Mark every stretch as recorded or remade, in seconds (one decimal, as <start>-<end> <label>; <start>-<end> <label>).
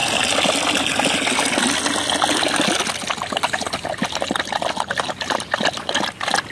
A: 0.0-4.0 recorded; 4.0-5.8 remade; 5.8-6.5 recorded